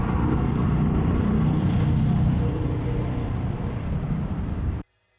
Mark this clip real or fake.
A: fake